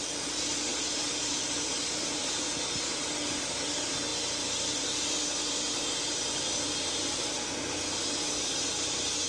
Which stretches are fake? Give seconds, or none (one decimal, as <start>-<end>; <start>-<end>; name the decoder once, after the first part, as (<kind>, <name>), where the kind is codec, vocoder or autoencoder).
0.7-2.5 (vocoder, BigVGAN v2)